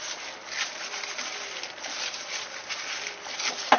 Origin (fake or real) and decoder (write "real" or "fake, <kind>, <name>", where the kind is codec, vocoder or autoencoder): real